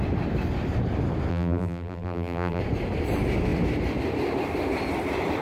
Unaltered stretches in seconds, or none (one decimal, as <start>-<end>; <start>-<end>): 0.0-1.3; 2.6-5.4